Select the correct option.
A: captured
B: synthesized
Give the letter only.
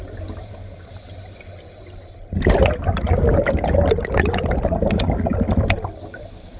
A